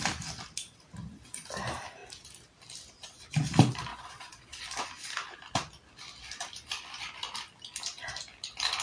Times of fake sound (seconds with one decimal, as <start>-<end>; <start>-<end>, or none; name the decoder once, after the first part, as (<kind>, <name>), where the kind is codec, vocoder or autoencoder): 3.9-4.6 (vocoder, Vocos)